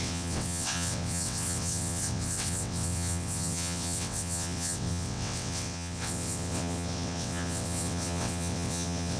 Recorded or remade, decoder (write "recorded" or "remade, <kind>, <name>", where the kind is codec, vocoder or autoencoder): remade, vocoder, WaveNeXt